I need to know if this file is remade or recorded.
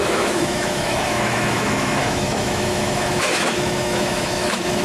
remade